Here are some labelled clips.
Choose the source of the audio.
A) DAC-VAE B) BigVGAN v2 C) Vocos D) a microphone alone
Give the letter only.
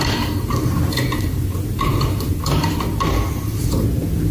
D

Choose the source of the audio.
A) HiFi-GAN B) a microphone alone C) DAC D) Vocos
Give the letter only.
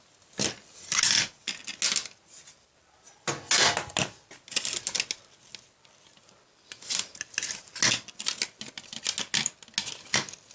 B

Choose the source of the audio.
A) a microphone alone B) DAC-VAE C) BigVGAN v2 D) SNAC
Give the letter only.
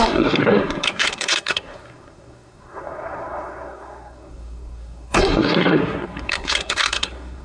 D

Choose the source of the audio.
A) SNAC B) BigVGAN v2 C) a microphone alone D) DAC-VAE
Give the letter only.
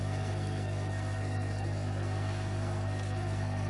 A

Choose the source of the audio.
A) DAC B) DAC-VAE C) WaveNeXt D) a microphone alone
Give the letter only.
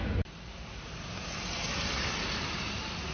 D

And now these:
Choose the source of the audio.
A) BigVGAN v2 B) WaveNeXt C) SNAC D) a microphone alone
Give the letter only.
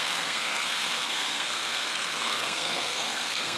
C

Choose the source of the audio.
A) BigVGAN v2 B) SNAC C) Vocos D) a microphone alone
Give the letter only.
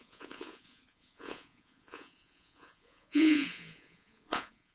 C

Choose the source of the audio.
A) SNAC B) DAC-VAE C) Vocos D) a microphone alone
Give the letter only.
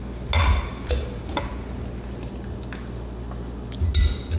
D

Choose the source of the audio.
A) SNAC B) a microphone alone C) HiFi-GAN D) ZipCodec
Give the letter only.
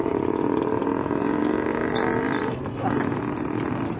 B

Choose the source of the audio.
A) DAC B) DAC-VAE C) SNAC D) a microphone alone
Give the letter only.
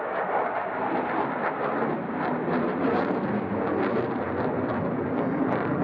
D